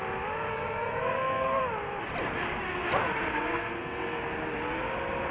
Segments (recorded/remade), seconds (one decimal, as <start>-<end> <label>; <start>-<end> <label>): 0.0-0.5 recorded; 0.5-1.6 remade; 1.6-3.3 recorded; 3.3-4.2 remade; 4.2-5.3 recorded